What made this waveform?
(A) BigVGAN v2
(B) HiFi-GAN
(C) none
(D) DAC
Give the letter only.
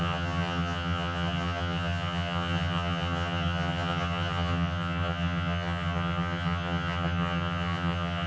B